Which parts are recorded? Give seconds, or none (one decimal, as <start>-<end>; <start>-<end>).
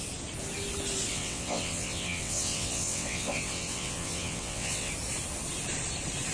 0.0-1.1; 4.9-6.3